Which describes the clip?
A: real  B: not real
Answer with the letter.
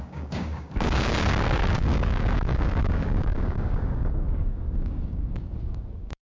B